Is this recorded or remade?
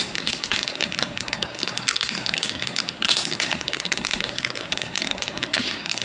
remade